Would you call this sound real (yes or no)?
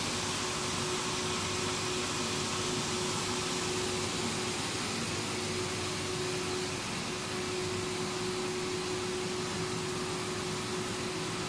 yes